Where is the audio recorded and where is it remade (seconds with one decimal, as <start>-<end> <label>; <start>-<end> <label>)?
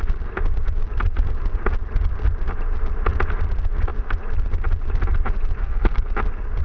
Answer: 0.0-5.6 recorded; 5.6-6.1 remade; 6.1-6.6 recorded